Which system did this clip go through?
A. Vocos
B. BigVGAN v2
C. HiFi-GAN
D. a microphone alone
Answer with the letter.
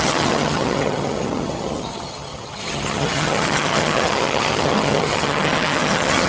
C